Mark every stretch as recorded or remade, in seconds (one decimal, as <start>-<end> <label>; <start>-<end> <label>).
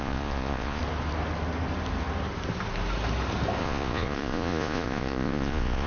0.0-0.8 remade; 0.8-3.6 recorded; 3.6-5.9 remade